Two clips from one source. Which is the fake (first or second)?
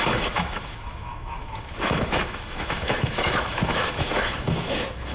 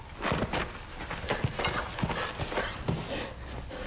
first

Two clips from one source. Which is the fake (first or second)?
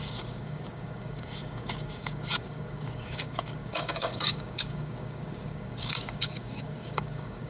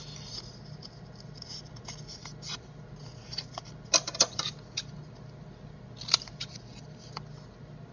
first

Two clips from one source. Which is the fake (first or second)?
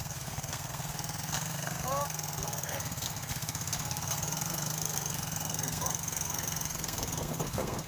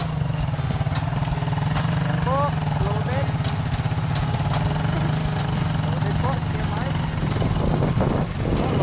first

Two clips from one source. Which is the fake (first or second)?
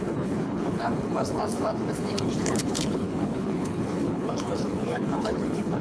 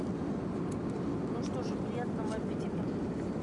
first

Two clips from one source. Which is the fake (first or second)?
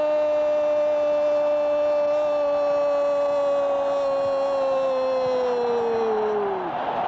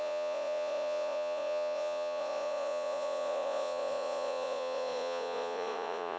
second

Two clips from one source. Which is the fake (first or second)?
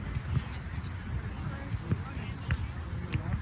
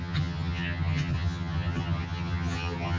second